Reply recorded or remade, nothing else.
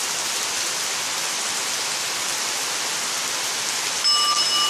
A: recorded